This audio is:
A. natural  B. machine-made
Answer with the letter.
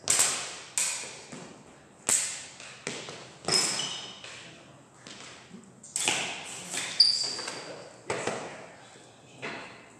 A